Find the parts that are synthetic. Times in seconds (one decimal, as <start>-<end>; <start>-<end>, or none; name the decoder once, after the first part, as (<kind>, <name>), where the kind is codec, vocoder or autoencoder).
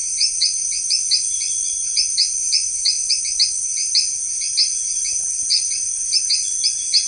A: 0.0-3.2 (vocoder, Vocos); 5.4-6.5